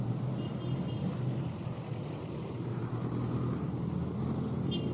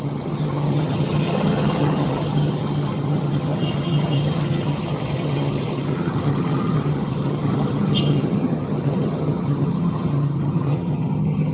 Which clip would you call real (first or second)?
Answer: first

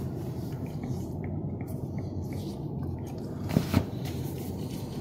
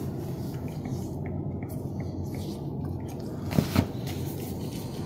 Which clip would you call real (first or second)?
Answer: second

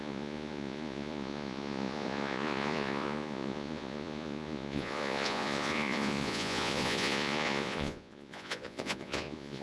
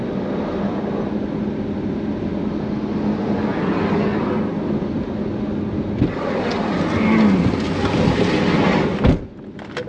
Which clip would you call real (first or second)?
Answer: second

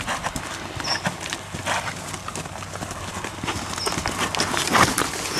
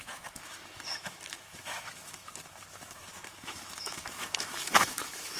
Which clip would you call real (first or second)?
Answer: first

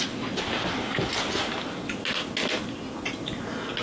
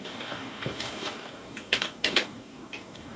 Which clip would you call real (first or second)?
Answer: first